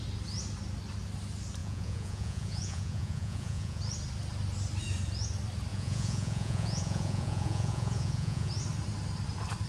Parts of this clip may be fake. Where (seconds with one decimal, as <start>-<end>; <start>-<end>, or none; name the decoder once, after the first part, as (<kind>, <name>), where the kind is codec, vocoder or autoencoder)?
1.6-3.8 (vocoder, Vocos); 5.7-8.5